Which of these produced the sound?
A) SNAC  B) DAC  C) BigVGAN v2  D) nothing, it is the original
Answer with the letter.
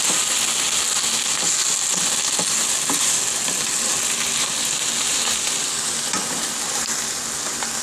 D